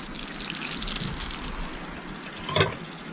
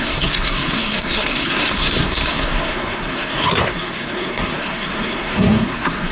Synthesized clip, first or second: second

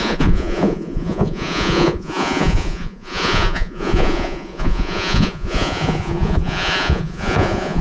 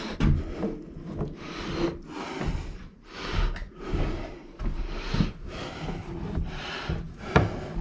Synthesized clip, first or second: first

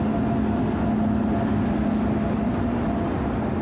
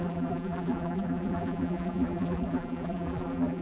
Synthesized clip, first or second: second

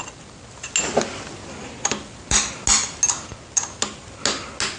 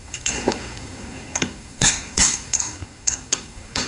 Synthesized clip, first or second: second